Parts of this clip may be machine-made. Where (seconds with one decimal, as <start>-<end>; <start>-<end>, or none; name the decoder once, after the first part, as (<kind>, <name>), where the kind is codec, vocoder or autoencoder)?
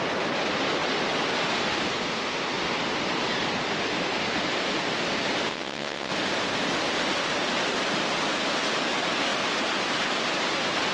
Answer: 5.5-6.1 (vocoder, WaveNeXt)